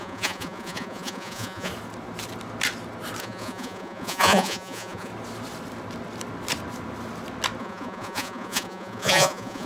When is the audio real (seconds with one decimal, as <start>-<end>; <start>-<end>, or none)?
1.7-3.2; 5.1-7.6